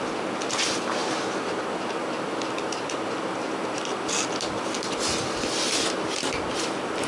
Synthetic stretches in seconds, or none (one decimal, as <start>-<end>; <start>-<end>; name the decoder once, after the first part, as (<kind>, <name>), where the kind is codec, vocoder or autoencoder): none